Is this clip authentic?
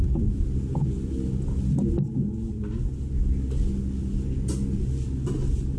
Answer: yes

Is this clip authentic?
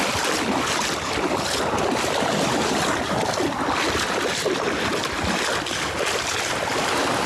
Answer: yes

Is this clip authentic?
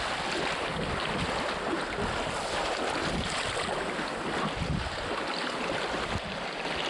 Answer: yes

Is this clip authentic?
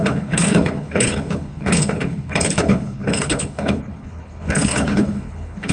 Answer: no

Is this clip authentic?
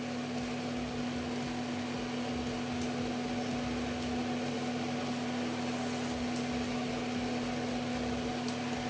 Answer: yes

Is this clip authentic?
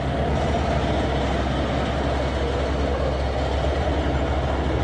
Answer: yes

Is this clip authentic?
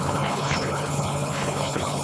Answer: no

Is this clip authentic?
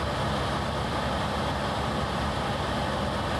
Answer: yes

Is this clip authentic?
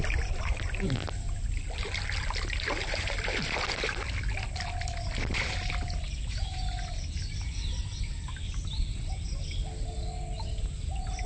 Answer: yes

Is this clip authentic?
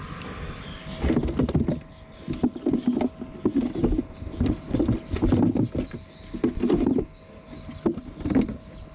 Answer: yes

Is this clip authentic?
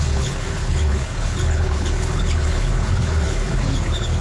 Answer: no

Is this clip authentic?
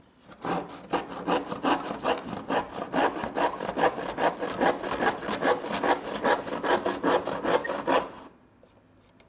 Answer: yes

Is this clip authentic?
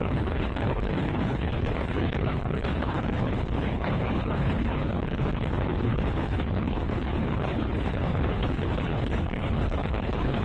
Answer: no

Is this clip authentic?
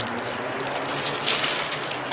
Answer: yes